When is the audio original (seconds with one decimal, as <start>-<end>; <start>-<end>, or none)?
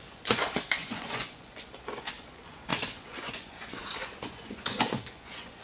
none